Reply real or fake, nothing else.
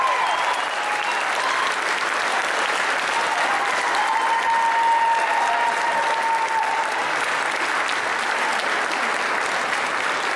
real